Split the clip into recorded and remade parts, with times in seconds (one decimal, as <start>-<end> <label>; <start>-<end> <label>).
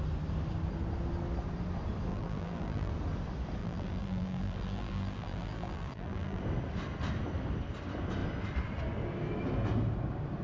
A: 0.0-2.1 recorded; 2.1-2.9 remade; 2.9-3.6 recorded; 3.6-6.4 remade; 6.4-10.4 recorded